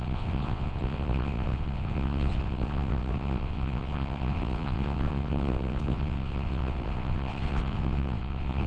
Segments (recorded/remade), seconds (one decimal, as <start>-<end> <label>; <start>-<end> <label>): 0.0-8.7 remade